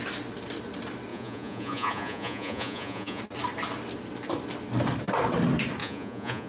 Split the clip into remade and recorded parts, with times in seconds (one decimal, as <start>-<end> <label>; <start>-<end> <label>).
0.0-1.1 recorded; 1.1-3.2 remade; 3.2-5.8 recorded; 5.8-6.5 remade